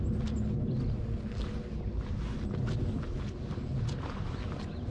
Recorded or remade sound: recorded